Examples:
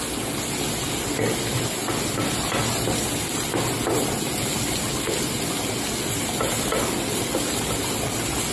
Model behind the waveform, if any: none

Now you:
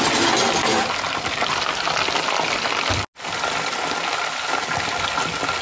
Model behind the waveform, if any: none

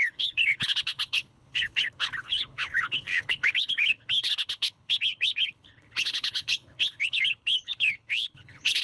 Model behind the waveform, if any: codec, HILCodec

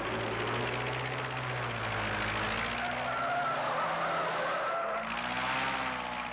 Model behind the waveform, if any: none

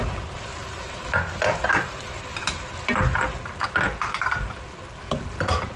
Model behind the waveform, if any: none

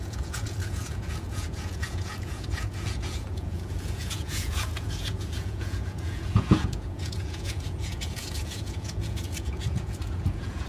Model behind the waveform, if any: vocoder, Vocos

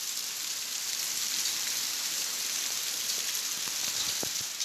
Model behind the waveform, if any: none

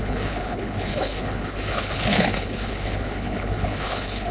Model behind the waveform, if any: codec, HILCodec